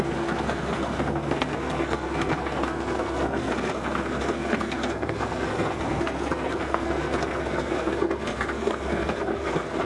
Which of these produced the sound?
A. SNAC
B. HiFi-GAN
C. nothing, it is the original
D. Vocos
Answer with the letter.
A